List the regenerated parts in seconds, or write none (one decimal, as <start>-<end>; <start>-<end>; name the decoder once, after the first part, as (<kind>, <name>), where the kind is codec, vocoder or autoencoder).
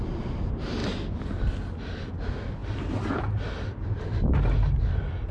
none